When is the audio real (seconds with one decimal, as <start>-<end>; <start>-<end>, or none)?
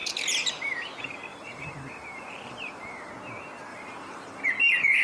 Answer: 0.5-1.3; 3.1-3.7; 4.4-5.0